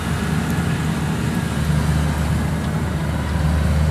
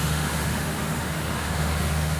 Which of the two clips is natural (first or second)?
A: first